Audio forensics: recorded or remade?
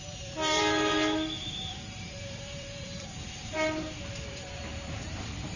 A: remade